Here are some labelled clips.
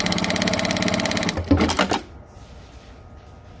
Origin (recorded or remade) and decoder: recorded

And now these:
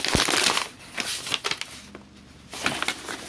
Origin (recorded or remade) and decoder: recorded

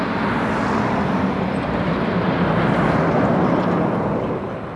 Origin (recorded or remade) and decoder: recorded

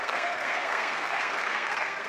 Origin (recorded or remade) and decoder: remade, codec, SNAC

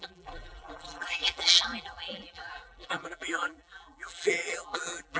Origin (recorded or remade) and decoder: remade, vocoder, BigVGAN v2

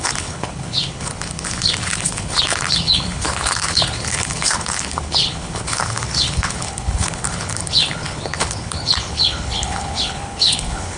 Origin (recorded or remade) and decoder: remade, codec, HILCodec